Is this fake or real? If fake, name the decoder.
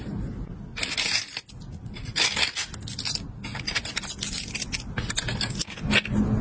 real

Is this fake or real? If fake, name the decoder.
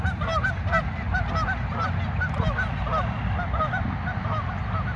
real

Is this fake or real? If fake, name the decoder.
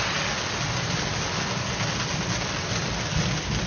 real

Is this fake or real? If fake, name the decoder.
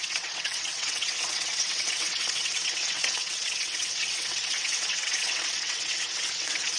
fake, vocoder, WaveNeXt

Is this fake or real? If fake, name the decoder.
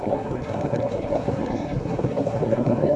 fake, codec, SNAC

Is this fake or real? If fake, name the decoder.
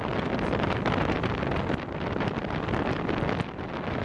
real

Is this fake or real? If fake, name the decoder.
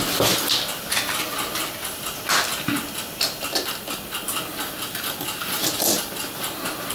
real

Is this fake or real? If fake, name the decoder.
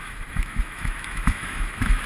fake, autoencoder, DAC-VAE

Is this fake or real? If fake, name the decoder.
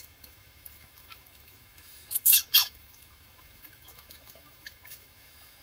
fake, autoencoder, DAC-VAE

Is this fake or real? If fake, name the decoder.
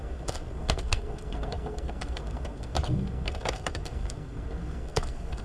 fake, codec, SNAC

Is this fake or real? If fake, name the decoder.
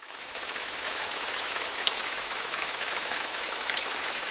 fake, autoencoder, DAC-VAE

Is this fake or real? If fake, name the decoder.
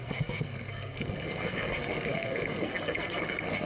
fake, codec, SNAC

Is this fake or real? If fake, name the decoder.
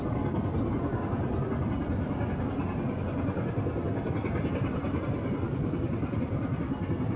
real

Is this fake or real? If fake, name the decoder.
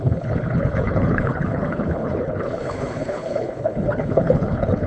fake, codec, HILCodec